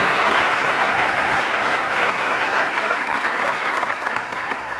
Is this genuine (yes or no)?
no